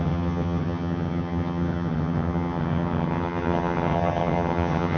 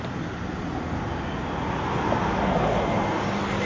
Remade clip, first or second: first